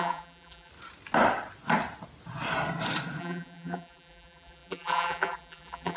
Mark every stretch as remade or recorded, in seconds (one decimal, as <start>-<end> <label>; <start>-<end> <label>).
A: 0.0-0.7 remade; 0.7-3.2 recorded; 3.2-6.0 remade